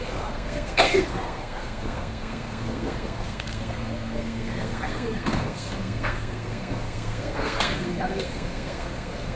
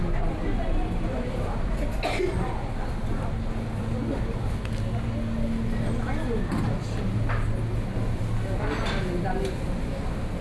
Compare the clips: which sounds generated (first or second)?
first